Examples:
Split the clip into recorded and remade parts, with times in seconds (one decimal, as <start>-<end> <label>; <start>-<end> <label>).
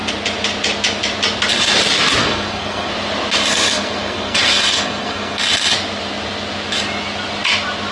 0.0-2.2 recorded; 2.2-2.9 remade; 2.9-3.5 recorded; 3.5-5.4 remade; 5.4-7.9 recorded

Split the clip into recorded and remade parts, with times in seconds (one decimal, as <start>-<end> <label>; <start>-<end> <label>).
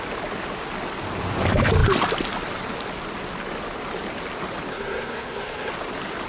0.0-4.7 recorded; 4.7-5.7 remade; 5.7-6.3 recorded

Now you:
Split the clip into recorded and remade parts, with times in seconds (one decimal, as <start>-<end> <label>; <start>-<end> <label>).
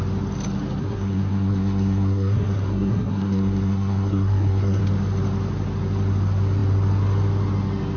0.0-0.8 recorded; 0.8-4.8 remade; 4.8-8.0 recorded